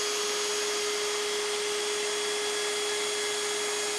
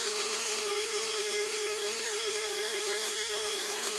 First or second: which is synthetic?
second